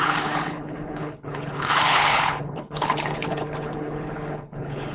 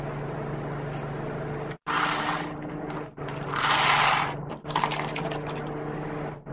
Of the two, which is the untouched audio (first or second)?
second